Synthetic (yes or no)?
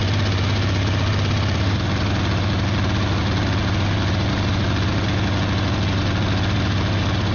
no